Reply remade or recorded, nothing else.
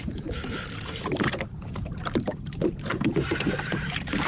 remade